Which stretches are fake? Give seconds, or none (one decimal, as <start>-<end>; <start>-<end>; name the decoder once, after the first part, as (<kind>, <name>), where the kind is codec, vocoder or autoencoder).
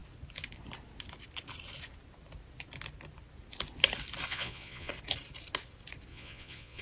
4.3-4.9 (vocoder, Vocos); 6.1-6.8